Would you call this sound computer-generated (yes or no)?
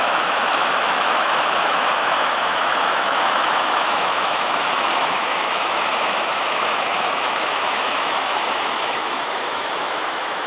yes